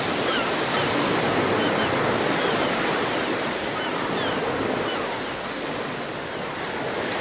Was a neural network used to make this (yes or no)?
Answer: no